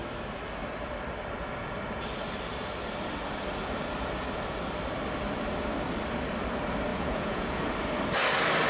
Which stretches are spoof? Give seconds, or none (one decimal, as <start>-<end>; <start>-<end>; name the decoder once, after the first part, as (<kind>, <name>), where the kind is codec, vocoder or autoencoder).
6.9-7.6 (vocoder, Vocos)